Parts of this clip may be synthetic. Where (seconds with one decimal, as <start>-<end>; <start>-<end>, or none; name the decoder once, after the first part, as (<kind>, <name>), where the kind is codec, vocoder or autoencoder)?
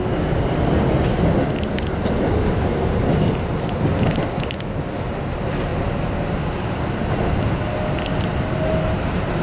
none